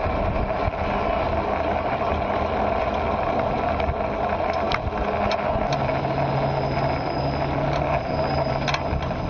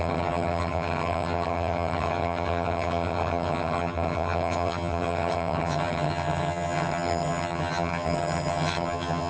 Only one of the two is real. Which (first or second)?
first